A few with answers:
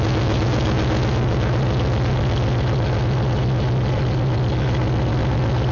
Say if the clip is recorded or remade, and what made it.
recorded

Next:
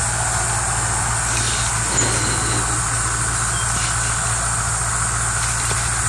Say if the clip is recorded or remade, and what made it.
recorded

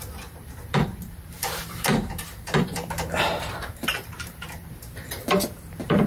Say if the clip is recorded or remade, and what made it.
remade, vocoder, BigVGAN v2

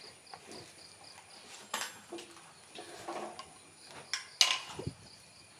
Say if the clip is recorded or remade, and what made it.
recorded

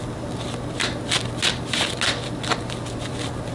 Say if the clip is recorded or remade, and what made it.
recorded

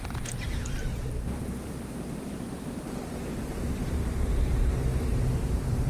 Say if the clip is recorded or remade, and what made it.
remade, vocoder, BigVGAN v2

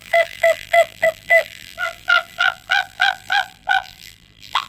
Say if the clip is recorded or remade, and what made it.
remade, vocoder, BigVGAN v2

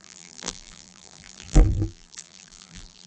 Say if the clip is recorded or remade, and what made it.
remade, vocoder, BigVGAN v2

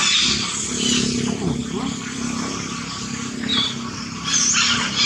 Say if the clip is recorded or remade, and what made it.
recorded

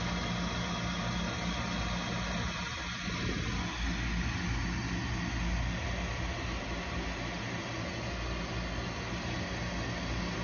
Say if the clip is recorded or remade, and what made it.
recorded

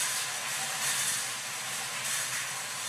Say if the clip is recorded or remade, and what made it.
recorded